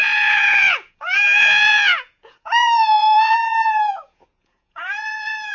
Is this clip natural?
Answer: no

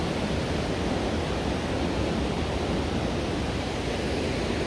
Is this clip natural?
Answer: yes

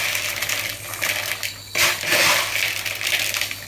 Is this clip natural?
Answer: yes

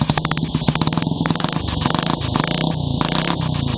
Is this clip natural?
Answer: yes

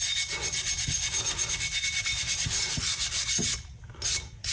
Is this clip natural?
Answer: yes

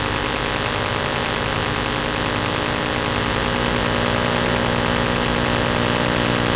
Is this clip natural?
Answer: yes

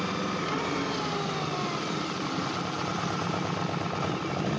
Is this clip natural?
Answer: yes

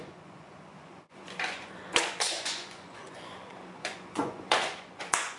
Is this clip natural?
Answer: no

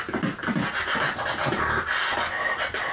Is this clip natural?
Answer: yes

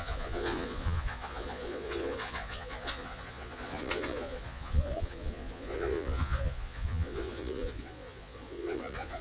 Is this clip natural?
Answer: no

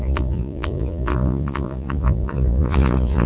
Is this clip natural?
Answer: no